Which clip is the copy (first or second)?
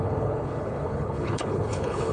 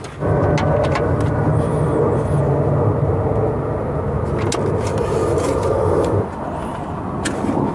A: first